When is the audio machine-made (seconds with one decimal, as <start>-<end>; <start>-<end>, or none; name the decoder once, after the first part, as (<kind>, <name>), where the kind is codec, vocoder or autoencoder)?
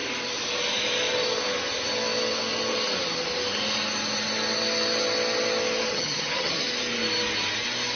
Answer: 5.9-6.5 (vocoder, HiFi-GAN)